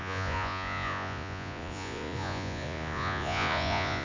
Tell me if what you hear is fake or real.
fake